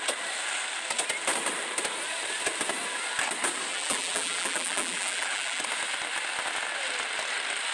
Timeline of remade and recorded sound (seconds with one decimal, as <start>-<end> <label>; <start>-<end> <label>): 0.0-3.7 recorded; 3.7-5.6 remade; 5.6-7.7 recorded